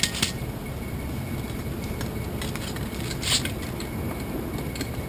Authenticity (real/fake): real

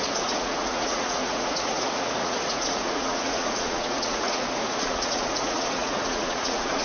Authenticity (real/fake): fake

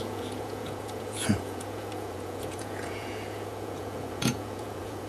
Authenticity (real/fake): fake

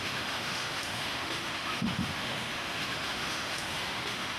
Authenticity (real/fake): fake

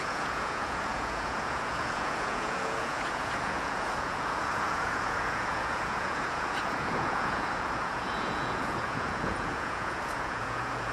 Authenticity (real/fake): fake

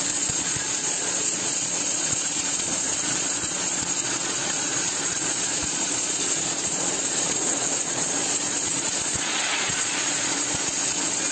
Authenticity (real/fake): fake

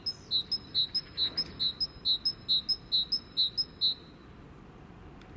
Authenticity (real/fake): real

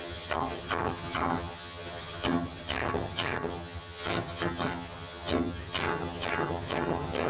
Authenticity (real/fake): fake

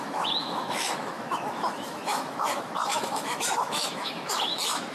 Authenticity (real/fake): fake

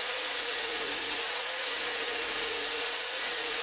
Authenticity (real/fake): fake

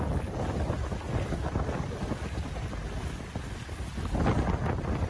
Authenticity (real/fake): real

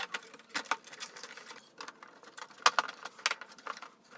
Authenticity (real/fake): real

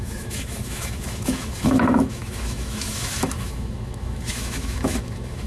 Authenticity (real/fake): fake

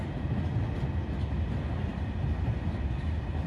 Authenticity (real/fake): real